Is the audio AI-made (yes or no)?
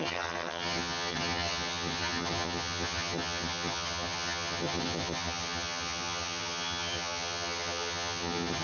yes